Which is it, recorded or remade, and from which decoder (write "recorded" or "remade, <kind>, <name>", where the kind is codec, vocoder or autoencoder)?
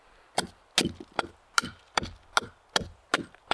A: recorded